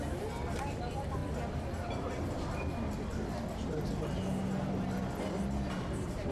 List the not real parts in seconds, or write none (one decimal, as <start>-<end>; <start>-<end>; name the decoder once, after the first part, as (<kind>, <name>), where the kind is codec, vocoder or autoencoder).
none